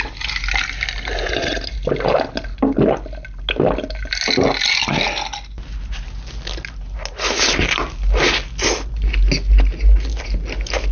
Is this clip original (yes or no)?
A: yes